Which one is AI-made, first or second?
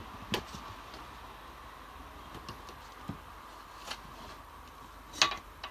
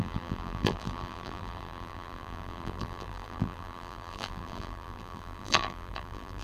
second